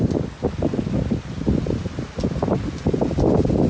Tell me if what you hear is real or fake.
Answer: real